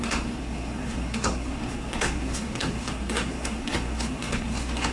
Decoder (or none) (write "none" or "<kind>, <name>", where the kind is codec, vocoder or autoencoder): codec, SNAC